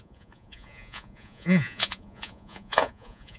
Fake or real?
fake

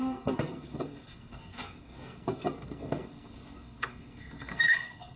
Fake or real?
fake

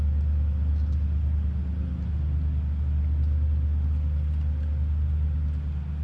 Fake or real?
real